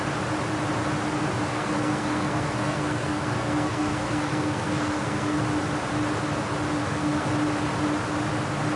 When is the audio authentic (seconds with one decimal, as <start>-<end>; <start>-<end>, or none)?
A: 0.0-1.5; 5.4-6.8; 7.3-8.8